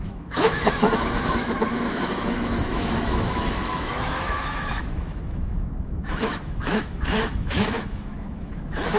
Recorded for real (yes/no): no